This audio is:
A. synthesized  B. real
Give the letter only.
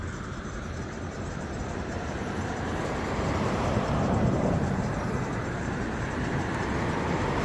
A